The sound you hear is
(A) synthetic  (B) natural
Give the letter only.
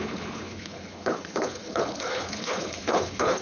A